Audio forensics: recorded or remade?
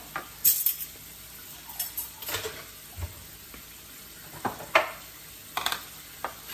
recorded